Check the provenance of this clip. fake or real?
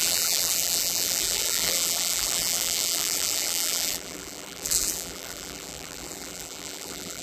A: fake